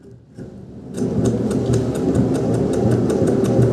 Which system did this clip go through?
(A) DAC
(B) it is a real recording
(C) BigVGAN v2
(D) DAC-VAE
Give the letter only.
B